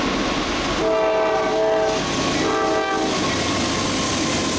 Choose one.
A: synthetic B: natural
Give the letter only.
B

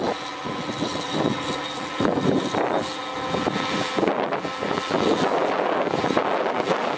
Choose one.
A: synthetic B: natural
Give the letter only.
A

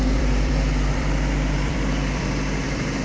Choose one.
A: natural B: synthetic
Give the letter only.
B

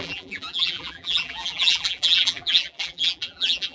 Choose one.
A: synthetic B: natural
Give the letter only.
A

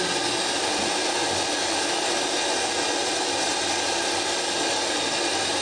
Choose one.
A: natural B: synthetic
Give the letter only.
A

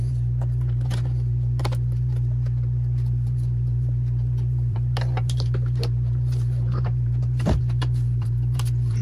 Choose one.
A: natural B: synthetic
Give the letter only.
B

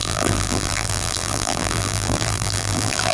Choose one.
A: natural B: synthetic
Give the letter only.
B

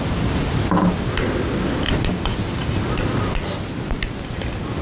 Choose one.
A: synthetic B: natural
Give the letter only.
B